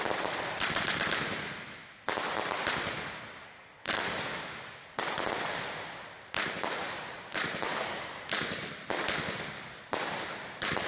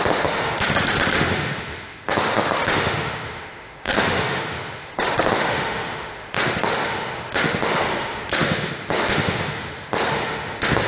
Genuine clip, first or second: first